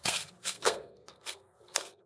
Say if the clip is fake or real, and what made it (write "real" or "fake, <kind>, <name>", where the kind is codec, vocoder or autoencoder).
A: fake, codec, SNAC